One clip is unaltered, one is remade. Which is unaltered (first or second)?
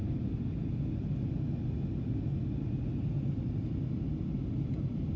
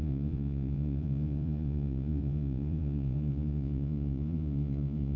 first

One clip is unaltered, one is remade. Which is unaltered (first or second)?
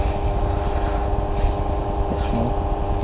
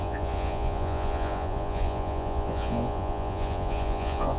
first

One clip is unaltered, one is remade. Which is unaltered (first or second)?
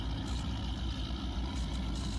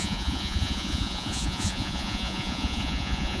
first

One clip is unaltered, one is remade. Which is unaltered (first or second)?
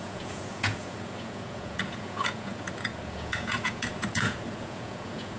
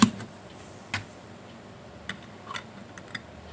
second